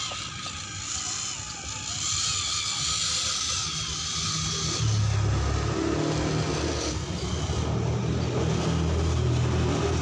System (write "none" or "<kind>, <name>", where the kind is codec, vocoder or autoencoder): none